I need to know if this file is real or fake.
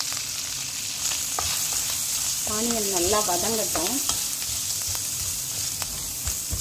real